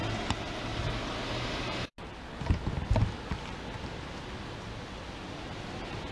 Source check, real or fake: real